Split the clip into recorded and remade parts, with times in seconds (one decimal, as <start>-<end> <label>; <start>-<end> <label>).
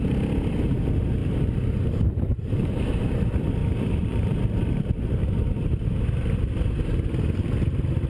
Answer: 0.0-1.2 recorded; 1.2-2.7 remade; 2.7-3.6 recorded; 3.6-5.3 remade; 5.3-8.1 recorded